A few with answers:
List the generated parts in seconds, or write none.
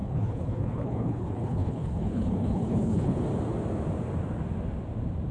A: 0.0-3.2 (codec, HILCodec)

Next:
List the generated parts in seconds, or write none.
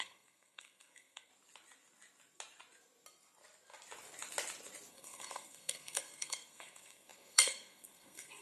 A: 0.0-1.3 (codec, SNAC); 4.9-8.4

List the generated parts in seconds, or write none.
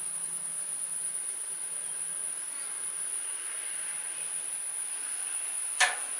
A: none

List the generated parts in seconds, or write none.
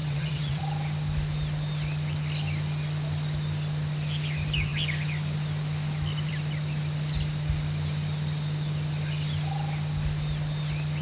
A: 0.0-0.6 (vocoder, WaveNeXt)